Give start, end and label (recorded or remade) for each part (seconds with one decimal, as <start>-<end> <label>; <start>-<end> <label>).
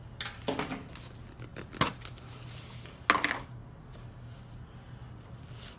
0.0-5.8 recorded